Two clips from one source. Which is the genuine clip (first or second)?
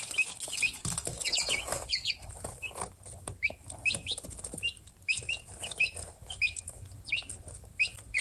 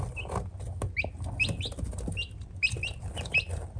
second